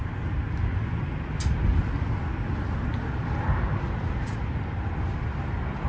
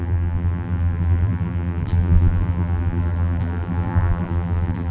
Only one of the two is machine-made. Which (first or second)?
second